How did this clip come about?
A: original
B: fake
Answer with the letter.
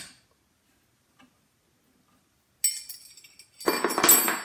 A